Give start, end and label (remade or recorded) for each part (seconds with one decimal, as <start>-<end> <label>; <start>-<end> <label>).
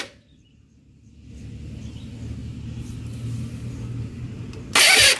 0.0-5.2 recorded